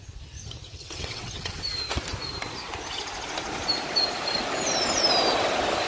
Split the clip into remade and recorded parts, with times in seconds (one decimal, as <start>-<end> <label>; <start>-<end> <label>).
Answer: 0.0-0.7 recorded; 0.7-1.6 remade; 1.6-5.9 recorded